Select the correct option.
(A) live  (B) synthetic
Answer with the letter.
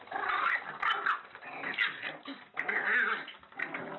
A